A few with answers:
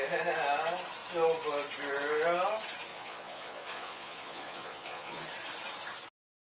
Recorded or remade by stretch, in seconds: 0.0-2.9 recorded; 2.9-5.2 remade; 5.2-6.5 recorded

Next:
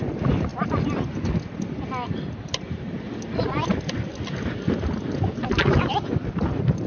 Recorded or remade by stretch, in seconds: 0.0-6.9 recorded